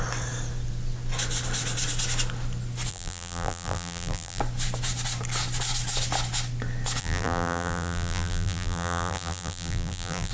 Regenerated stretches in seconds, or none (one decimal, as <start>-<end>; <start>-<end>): 2.9-4.4; 7.0-10.3